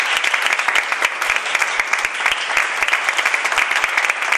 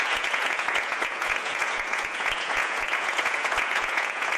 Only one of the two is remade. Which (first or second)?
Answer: second